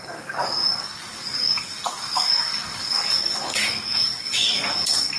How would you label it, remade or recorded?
remade